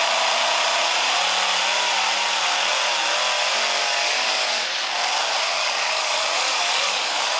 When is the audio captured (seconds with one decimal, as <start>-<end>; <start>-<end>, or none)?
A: 0.0-3.8; 4.7-5.6